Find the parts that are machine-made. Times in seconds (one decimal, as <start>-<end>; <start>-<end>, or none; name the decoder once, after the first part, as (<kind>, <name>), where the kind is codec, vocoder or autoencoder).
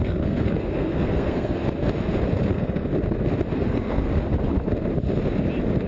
0.0-1.6 (codec, SNAC); 2.5-2.9; 3.6-4.1